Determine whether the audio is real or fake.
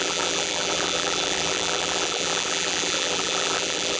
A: fake